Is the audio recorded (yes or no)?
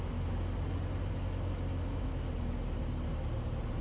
yes